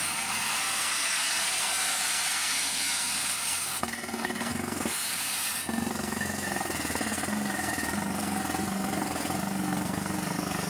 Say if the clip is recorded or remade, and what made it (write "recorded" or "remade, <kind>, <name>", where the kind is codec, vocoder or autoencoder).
remade, codec, SNAC